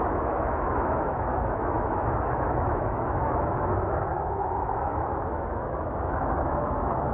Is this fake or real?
fake